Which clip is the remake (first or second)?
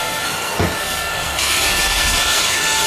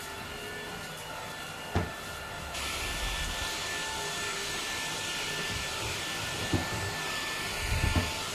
first